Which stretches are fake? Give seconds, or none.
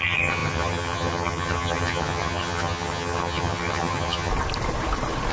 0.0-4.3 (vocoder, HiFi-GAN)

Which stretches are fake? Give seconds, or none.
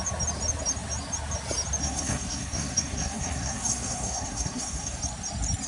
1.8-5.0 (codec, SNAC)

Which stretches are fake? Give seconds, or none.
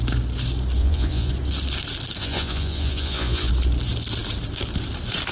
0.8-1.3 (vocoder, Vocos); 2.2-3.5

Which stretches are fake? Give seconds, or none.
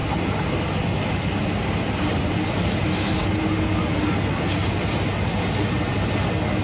0.0-1.3 (vocoder, BigVGAN v2); 2.5-3.2; 3.8-6.6